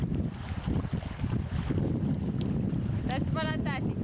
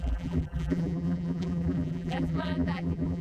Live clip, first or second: first